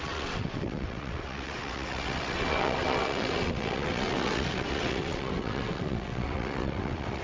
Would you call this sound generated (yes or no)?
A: yes